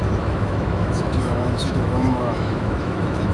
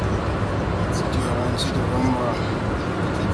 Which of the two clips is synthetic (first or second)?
first